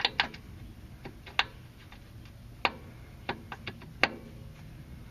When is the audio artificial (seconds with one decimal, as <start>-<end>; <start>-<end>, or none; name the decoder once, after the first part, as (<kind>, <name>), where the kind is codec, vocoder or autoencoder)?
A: none